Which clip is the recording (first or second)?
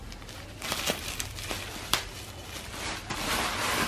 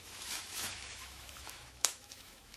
first